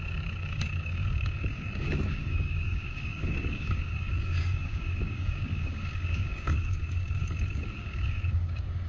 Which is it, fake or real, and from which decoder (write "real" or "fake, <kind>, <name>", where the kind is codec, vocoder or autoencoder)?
fake, codec, DAC